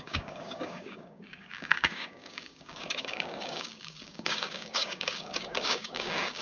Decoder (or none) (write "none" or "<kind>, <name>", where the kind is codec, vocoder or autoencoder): codec, DAC